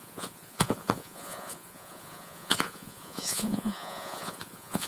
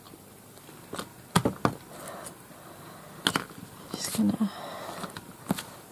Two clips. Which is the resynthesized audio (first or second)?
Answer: first